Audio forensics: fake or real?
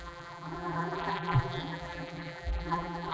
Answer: fake